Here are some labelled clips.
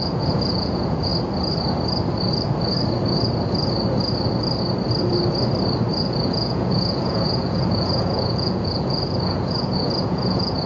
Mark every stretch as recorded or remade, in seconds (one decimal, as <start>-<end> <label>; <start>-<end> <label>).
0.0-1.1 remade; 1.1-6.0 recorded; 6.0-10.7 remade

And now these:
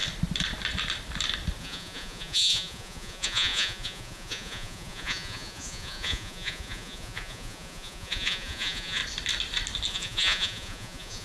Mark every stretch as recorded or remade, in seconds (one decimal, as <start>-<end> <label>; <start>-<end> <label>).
0.0-1.6 recorded; 1.6-9.0 remade; 9.0-9.9 recorded; 9.9-11.2 remade

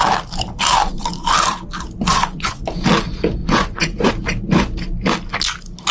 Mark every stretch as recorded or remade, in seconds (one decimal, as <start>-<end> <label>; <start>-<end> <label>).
0.0-2.1 recorded; 2.1-2.6 remade; 2.6-3.4 recorded; 3.4-4.1 remade; 4.1-5.9 recorded

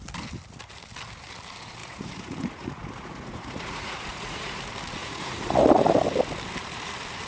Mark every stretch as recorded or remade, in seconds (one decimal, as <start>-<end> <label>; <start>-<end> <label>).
0.0-1.8 recorded; 1.8-4.6 remade; 4.6-5.0 recorded; 5.0-5.9 remade; 5.9-7.3 recorded

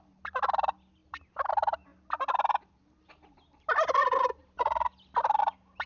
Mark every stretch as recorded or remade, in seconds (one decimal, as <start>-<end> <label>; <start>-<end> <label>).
0.0-5.9 recorded

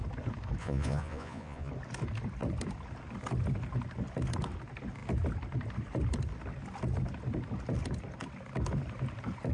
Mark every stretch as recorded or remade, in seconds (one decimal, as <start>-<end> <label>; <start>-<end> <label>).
0.0-0.6 recorded; 0.6-1.7 remade; 1.7-9.5 recorded

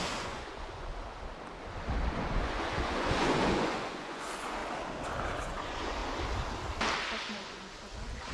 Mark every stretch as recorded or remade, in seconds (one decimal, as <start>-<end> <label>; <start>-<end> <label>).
0.0-0.9 remade; 0.9-2.1 recorded; 2.1-4.6 remade; 4.6-5.4 recorded; 5.4-6.0 remade; 6.0-7.2 recorded; 7.2-8.3 remade